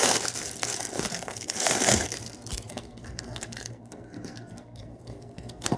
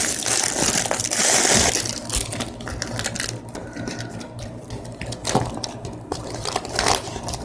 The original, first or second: second